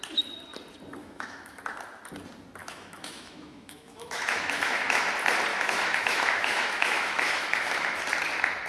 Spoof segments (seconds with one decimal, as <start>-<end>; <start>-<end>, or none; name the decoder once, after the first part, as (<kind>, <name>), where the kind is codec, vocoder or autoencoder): 1.0-1.6 (autoencoder, DAC-VAE); 2.6-5.0; 5.5-8.0